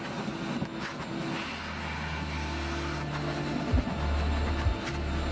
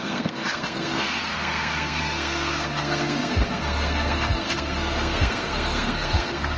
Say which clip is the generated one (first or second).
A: second